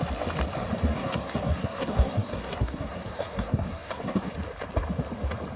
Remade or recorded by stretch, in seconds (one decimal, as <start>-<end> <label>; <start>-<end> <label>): 0.0-0.9 recorded; 0.9-4.3 remade; 4.3-5.6 recorded